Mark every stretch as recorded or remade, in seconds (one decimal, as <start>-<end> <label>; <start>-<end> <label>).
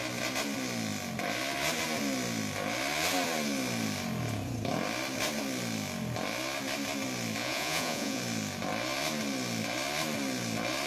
0.0-7.4 recorded; 7.4-8.2 remade; 8.2-10.9 recorded